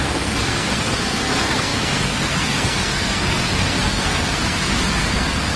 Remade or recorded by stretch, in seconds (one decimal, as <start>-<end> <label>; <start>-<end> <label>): 0.0-5.6 remade